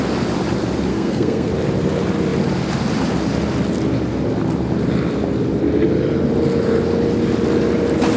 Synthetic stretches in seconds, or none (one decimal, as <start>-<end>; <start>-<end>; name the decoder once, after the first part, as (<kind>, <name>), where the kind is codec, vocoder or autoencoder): 0.9-1.5 (codec, SNAC)